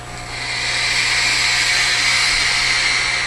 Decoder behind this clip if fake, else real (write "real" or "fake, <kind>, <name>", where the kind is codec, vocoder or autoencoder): real